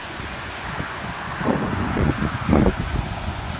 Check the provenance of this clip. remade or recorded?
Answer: remade